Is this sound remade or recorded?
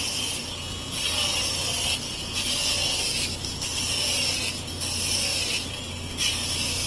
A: recorded